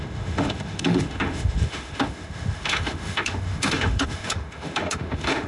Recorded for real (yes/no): no